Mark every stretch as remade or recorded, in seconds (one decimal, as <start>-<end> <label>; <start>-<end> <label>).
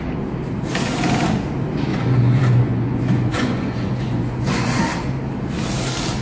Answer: 0.0-1.9 recorded; 1.9-4.8 remade; 4.8-6.2 recorded